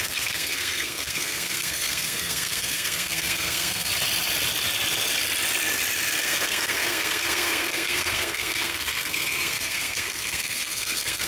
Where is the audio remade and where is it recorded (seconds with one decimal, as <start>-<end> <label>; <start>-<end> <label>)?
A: 0.0-3.9 remade; 3.9-6.2 recorded; 6.2-11.3 remade